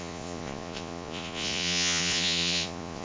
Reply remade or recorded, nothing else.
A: remade